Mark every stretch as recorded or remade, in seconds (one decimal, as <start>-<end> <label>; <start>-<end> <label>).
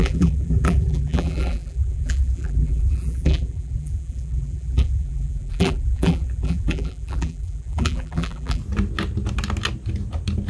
0.0-8.6 remade; 8.6-10.5 recorded